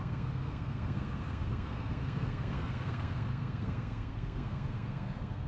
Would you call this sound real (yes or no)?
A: no